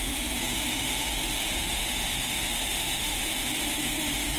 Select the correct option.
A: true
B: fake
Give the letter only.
B